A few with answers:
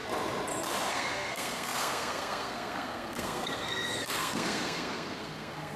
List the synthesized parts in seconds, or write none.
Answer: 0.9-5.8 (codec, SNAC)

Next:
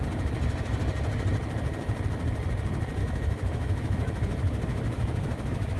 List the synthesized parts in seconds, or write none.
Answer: 3.0-5.8 (autoencoder, DAC-VAE)